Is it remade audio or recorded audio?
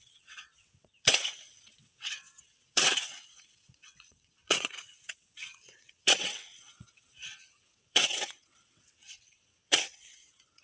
remade